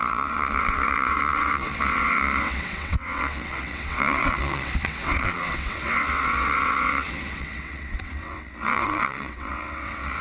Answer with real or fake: fake